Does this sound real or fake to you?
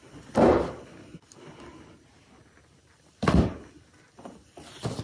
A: real